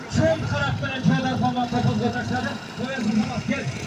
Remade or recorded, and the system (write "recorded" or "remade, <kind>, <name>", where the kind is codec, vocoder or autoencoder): recorded